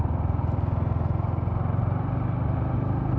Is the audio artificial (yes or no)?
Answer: no